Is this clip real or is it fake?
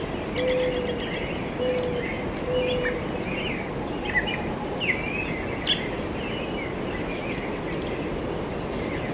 real